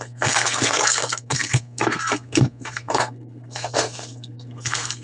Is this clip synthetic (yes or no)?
yes